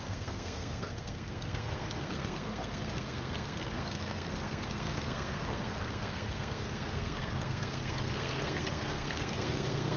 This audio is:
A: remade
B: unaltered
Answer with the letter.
A